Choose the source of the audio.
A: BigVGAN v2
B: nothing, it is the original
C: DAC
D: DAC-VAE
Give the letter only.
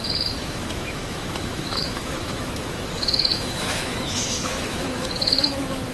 D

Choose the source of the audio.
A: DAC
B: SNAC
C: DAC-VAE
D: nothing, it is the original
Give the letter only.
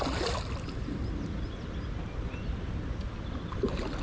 D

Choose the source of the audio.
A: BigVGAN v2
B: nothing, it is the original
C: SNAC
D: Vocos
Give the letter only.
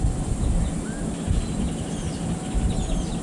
B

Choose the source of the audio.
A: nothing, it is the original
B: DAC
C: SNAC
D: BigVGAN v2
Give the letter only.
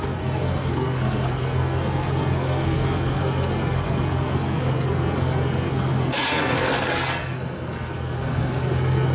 C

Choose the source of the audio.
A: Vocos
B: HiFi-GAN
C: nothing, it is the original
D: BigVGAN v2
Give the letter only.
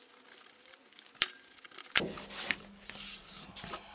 C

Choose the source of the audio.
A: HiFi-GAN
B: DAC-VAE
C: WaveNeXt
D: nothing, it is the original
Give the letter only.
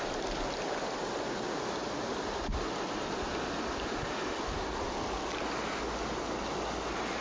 D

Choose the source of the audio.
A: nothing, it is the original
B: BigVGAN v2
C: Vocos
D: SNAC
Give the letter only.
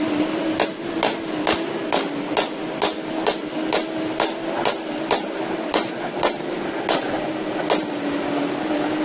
A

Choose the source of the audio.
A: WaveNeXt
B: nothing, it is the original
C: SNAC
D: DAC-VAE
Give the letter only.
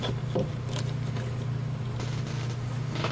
B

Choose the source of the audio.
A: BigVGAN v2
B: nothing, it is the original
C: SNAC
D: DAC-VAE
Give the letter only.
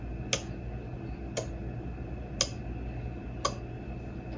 B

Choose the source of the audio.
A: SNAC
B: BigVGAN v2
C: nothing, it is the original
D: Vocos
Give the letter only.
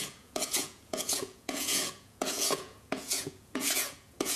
D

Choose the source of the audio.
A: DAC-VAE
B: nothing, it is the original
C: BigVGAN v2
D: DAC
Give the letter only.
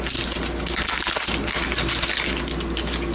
B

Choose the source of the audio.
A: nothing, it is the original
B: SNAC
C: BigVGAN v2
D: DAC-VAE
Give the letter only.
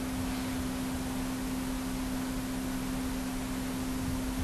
A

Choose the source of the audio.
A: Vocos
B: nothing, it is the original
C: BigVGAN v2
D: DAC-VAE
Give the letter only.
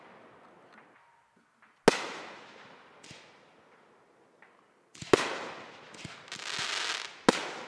B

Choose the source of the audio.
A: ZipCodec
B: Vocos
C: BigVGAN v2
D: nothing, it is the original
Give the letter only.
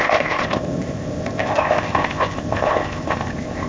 A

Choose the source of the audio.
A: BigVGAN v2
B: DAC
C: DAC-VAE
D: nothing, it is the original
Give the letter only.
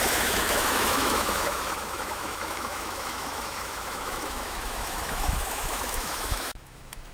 C